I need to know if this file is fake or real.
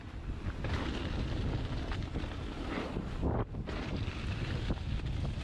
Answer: fake